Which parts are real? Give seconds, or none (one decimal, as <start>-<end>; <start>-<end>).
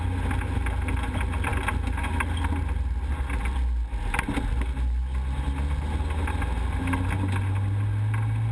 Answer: 0.0-8.5